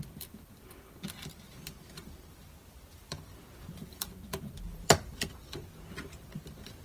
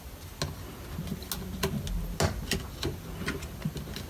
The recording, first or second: second